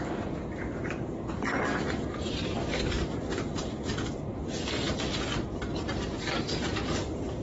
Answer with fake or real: fake